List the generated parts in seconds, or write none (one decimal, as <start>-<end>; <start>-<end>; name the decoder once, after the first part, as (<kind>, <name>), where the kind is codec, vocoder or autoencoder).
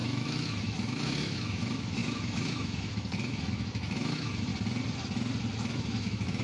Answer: 0.0-4.5 (autoencoder, DAC-VAE); 5.6-6.4